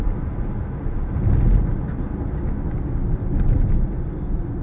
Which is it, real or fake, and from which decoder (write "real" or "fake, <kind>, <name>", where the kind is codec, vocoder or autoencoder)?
real